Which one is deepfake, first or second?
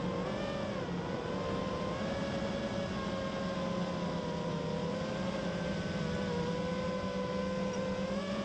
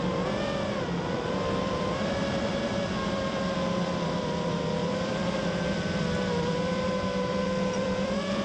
second